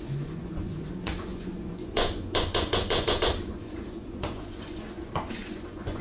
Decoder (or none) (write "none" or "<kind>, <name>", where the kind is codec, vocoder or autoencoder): vocoder, Vocos